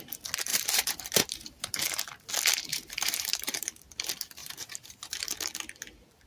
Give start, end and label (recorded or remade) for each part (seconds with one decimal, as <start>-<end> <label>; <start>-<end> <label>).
0.0-0.5 recorded; 0.5-2.3 remade; 2.3-2.7 recorded; 2.7-3.8 remade; 3.8-4.4 recorded; 4.4-5.3 remade; 5.3-6.3 recorded